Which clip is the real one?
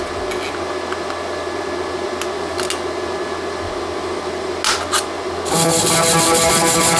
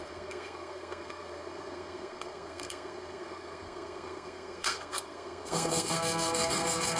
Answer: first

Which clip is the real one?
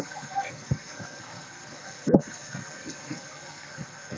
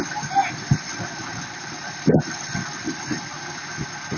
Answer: second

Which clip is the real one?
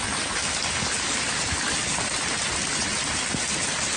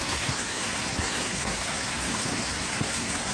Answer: first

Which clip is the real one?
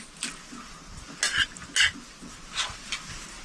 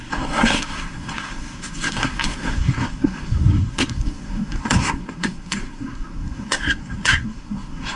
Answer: first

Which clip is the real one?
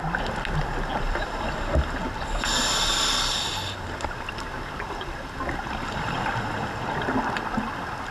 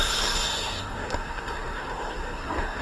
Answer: first